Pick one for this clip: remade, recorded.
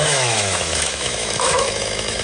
remade